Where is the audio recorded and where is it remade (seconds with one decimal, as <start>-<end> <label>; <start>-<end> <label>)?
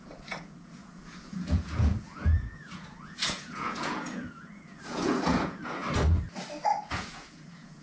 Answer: 0.0-5.8 remade; 5.8-6.9 recorded; 6.9-7.8 remade